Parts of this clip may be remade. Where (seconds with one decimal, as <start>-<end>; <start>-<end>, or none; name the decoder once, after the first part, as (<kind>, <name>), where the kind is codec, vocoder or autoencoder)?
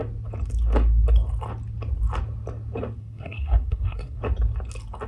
3.0-4.2 (codec, SNAC)